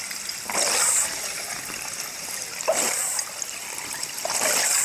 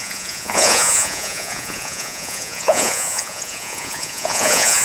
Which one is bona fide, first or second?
first